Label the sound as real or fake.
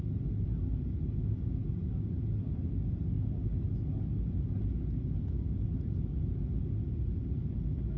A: real